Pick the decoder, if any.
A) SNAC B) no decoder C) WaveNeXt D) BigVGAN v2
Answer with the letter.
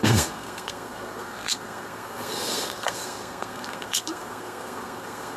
A